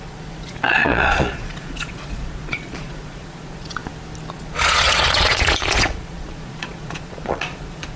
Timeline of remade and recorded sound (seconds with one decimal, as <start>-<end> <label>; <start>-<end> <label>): 0.0-3.8 remade; 3.8-4.3 recorded; 4.3-8.0 remade